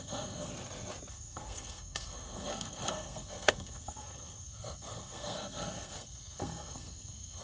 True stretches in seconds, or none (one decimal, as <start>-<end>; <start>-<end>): 0.5-1.1